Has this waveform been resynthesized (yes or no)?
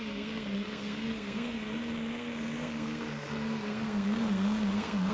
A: yes